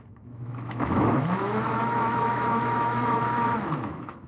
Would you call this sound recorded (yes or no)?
no